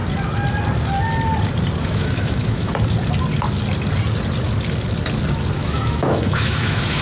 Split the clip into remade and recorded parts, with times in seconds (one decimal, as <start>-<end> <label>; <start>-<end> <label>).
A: 0.0-1.8 recorded; 1.8-2.7 remade; 2.7-5.6 recorded; 5.6-7.0 remade